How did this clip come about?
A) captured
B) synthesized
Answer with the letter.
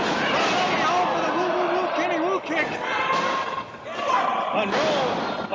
A